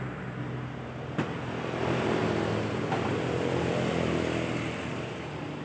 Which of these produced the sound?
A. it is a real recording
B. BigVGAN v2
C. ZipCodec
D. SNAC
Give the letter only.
A